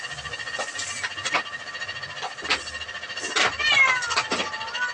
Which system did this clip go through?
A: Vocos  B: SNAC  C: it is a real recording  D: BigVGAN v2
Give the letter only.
C